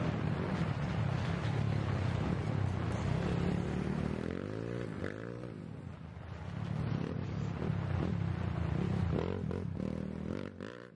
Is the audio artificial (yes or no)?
no